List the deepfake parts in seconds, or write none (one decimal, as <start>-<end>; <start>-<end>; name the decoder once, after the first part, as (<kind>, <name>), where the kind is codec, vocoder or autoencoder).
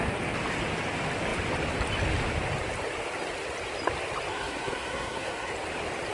4.3-5.5 (codec, SNAC)